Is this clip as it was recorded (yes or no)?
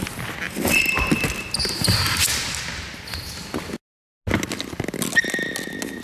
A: yes